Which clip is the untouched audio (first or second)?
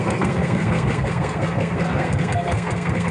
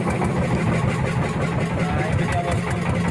second